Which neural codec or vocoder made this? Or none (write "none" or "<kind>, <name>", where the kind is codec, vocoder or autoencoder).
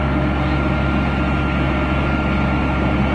none